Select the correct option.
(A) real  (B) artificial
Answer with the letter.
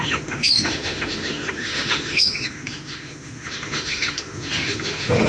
B